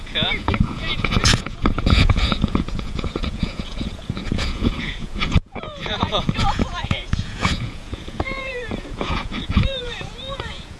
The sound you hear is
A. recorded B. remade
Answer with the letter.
B